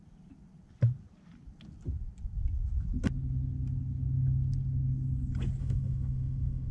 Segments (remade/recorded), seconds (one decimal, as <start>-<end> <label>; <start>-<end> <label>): 0.0-5.6 recorded; 5.6-6.7 remade